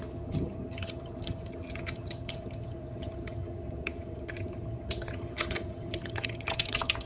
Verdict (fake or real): fake